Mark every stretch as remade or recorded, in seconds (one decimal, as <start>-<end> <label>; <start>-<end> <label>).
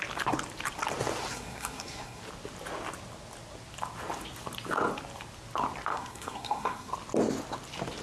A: 0.0-1.3 recorded; 1.3-2.2 remade; 2.2-5.9 recorded; 5.9-6.9 remade; 6.9-8.0 recorded